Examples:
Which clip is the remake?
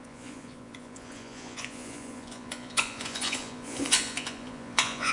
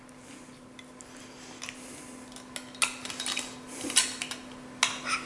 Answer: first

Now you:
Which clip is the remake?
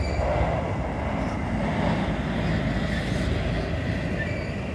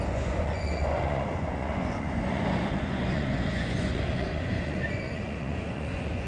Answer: second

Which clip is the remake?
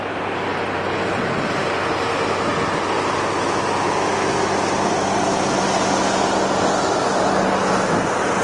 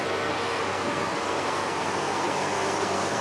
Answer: second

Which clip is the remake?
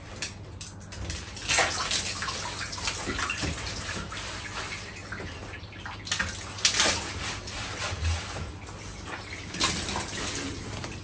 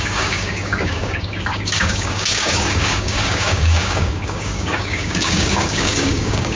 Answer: second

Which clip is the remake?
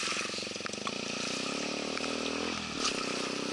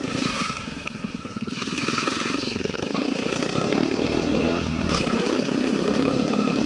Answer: second